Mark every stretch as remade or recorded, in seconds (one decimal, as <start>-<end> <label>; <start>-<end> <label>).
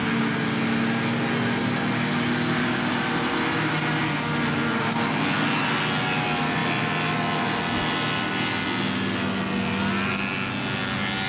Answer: 0.0-11.3 recorded